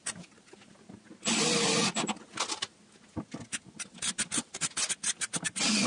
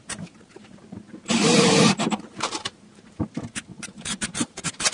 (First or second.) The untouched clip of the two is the first